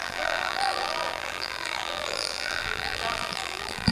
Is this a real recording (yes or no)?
no